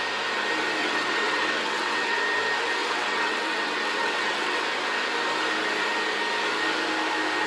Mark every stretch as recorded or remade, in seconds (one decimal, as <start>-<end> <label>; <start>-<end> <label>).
0.0-0.8 recorded; 0.8-2.2 remade; 2.2-2.8 recorded; 2.8-4.6 remade; 4.6-7.5 recorded